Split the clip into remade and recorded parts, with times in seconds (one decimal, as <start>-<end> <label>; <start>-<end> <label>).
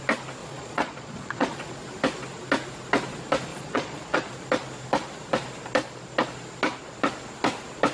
0.0-0.4 recorded; 0.4-1.7 remade; 1.7-3.5 recorded; 3.5-4.3 remade; 4.3-7.9 recorded